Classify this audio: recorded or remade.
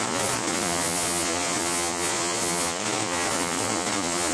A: remade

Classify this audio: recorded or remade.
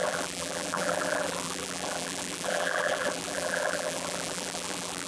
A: remade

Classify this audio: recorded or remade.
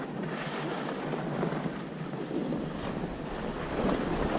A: remade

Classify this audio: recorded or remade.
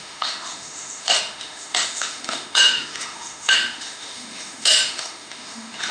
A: remade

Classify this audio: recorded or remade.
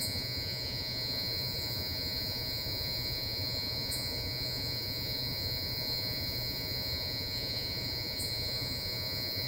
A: remade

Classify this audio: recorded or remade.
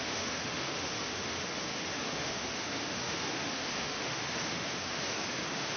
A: remade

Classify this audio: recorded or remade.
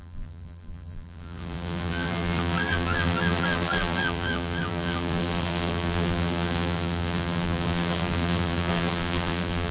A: remade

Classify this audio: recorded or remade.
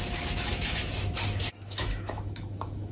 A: remade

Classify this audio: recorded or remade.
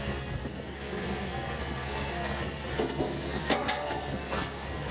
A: remade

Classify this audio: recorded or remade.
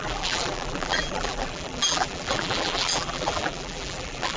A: remade